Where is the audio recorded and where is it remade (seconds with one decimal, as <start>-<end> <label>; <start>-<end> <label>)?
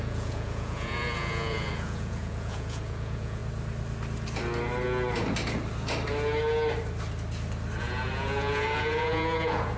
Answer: 0.0-3.4 remade; 3.4-7.8 recorded; 7.8-9.8 remade